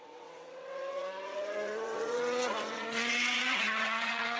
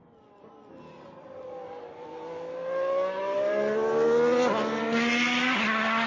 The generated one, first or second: first